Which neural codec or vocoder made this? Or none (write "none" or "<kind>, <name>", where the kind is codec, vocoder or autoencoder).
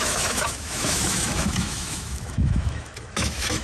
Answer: autoencoder, DAC-VAE